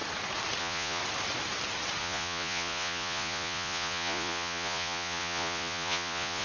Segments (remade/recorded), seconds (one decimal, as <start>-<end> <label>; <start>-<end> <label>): 0.0-0.6 recorded; 0.6-1.0 remade; 1.0-2.0 recorded; 2.0-6.4 remade